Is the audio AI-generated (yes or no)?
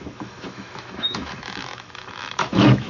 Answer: yes